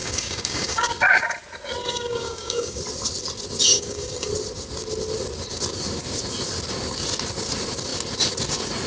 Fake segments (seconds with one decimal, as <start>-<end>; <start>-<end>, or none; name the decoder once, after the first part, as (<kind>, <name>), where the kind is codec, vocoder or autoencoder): 0.0-0.9 (codec, DAC); 1.8-2.8; 3.7-4.3